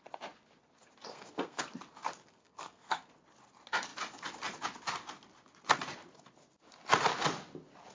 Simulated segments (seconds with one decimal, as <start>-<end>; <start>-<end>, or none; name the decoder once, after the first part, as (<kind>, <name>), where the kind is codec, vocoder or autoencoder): 1.1-1.6 (codec, SNAC); 2.3-3.1